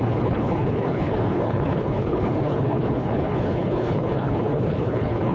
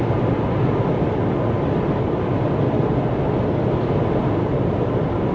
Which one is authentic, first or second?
second